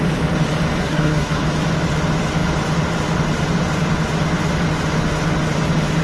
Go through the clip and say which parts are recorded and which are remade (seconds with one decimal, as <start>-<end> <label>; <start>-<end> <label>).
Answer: 0.0-0.8 recorded; 0.8-1.4 remade; 1.4-6.0 recorded

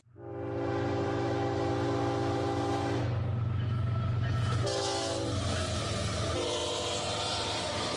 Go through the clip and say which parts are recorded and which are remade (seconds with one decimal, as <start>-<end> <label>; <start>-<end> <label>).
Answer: 0.0-6.6 recorded; 6.6-8.0 remade

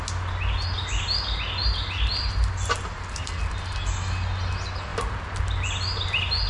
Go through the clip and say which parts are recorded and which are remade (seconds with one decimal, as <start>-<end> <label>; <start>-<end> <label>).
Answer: 0.0-6.5 recorded

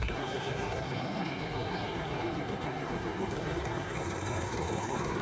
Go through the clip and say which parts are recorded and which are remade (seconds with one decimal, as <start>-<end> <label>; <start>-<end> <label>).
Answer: 0.0-5.2 remade

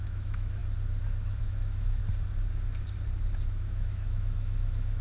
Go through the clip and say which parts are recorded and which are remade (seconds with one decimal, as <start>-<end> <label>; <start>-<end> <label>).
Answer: 0.0-0.6 remade; 0.6-1.4 recorded; 1.4-2.0 remade; 2.0-3.4 recorded; 3.4-5.0 remade

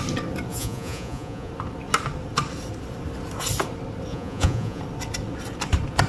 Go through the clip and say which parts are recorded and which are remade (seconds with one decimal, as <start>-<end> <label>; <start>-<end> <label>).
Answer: 0.0-0.5 recorded; 0.5-1.5 remade; 1.5-4.1 recorded; 4.1-4.8 remade; 4.8-6.1 recorded

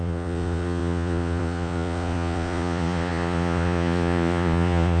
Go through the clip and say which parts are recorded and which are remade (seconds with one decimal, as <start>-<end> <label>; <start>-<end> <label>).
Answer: 0.0-5.0 remade

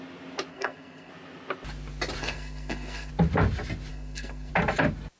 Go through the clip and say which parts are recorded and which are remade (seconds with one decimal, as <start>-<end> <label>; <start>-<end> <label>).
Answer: 0.0-0.5 recorded; 0.5-1.1 remade; 1.1-2.2 recorded; 2.2-3.1 remade; 3.1-3.9 recorded; 3.9-4.5 remade; 4.5-5.2 recorded